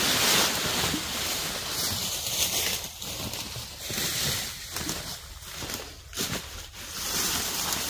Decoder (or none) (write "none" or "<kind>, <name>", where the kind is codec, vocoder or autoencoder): none